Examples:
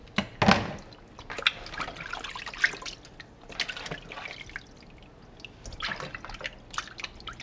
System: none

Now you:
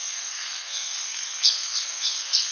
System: codec, SNAC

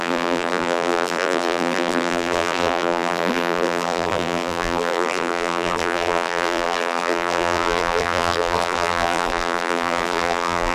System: vocoder, BigVGAN v2